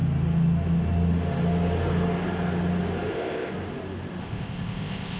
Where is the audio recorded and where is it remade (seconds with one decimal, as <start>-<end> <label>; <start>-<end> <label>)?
0.0-3.1 recorded; 3.1-3.5 remade; 3.5-4.2 recorded; 4.2-5.2 remade